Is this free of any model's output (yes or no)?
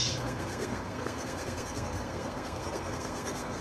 no